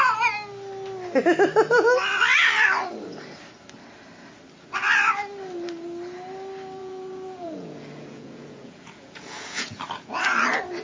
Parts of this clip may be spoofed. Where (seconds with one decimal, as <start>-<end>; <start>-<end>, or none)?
6.8-10.2